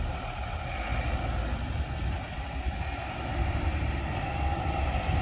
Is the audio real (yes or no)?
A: yes